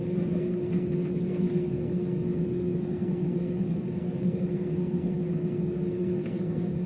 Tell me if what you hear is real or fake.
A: fake